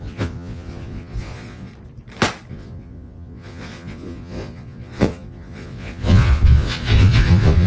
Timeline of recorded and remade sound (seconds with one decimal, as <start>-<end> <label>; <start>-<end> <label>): 0.0-1.7 remade; 1.7-2.5 recorded; 2.5-7.7 remade